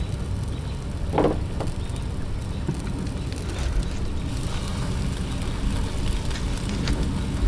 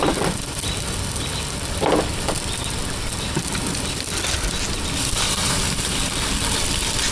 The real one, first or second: first